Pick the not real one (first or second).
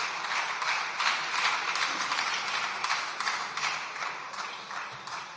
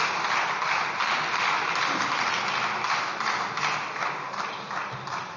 first